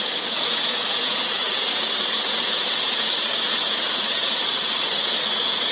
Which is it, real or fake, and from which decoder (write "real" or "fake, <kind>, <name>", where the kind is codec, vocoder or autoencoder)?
fake, vocoder, Vocos